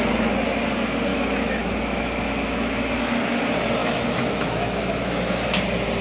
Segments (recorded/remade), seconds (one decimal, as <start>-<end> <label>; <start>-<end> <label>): 0.0-1.1 recorded; 1.1-3.0 remade; 3.0-3.8 recorded; 3.8-5.2 remade; 5.2-6.0 recorded